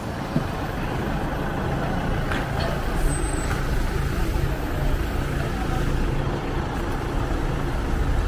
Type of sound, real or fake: real